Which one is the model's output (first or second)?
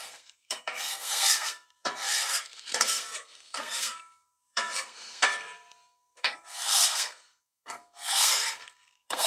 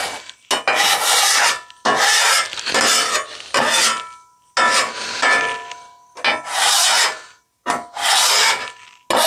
first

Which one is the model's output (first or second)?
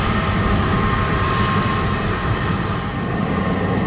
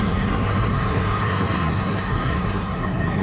second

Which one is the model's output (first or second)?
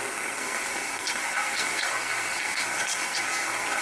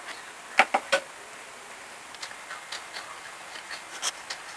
first